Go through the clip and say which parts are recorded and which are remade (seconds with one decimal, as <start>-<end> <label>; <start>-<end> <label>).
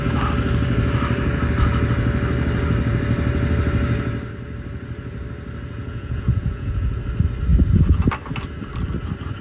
0.0-5.8 recorded; 5.8-7.0 remade; 7.0-9.4 recorded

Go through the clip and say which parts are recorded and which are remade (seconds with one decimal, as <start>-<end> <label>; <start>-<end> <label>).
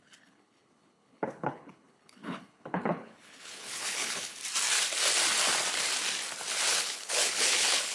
0.0-4.4 remade; 4.4-6.7 recorded; 6.7-7.9 remade